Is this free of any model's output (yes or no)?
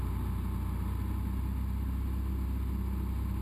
yes